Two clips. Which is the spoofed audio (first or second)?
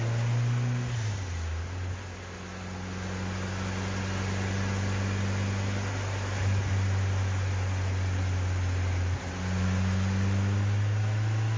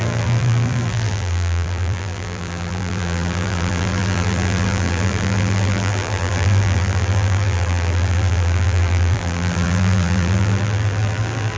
second